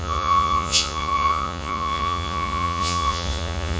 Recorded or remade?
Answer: remade